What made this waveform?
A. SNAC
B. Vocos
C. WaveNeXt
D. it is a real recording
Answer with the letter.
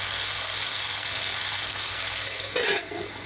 A